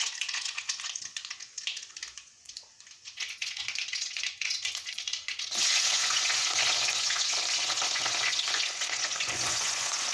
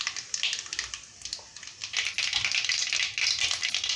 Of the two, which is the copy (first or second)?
first